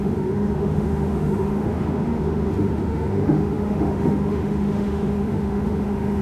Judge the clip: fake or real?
fake